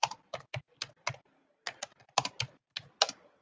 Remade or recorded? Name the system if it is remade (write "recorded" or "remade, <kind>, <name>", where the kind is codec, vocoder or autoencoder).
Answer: recorded